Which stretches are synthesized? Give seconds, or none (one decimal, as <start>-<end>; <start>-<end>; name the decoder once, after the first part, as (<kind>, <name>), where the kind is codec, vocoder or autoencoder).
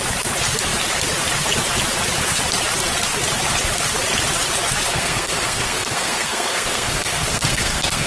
4.9-8.1 (codec, SNAC)